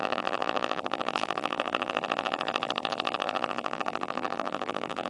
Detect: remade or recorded remade